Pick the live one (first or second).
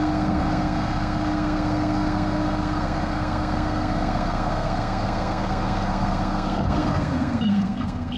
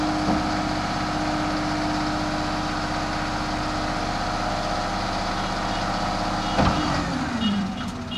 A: second